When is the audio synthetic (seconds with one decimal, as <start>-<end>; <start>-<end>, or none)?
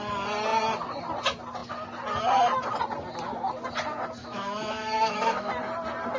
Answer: 4.2-5.5